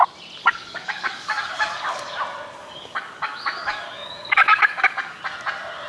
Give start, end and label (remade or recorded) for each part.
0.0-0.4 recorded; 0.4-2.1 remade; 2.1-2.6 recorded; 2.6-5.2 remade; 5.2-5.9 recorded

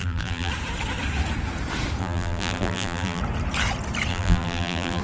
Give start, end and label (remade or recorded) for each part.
0.0-0.5 remade; 0.5-2.0 recorded; 2.0-3.2 remade; 3.2-4.1 recorded; 4.1-5.0 remade

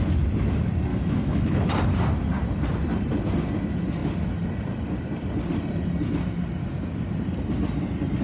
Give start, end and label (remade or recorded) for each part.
0.0-0.9 recorded; 0.9-1.7 remade; 1.7-8.2 recorded

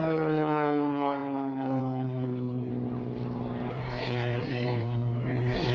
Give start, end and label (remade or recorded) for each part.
0.0-2.7 remade; 2.7-3.7 recorded; 3.7-5.7 remade